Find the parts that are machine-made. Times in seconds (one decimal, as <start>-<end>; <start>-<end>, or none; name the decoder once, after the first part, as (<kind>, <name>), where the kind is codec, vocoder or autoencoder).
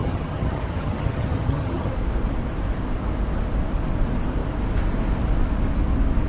0.0-1.9 (vocoder, HiFi-GAN)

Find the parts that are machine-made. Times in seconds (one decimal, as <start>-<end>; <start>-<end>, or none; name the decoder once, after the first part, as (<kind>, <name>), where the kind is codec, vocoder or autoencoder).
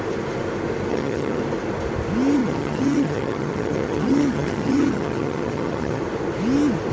0.9-1.4 (vocoder, HiFi-GAN); 2.4-6.0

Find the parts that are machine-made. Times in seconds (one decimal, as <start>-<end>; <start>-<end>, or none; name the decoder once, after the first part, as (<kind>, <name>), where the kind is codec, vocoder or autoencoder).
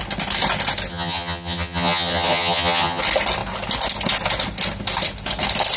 0.9-3.0 (vocoder, HiFi-GAN)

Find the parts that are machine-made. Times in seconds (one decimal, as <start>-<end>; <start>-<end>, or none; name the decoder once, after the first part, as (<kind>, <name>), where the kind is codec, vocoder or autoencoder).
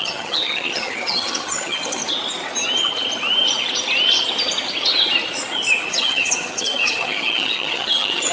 0.0-2.0 (vocoder, HiFi-GAN); 5.9-8.3